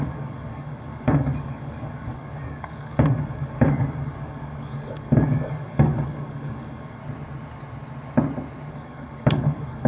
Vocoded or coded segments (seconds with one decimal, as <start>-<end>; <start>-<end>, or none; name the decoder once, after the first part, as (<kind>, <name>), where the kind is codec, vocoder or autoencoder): 0.0-7.0 (codec, DAC); 8.7-9.9